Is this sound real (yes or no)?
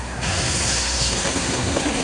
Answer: no